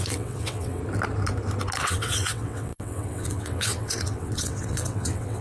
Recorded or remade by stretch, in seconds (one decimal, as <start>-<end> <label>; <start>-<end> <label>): 0.0-0.8 remade; 0.8-1.8 recorded; 1.8-5.4 remade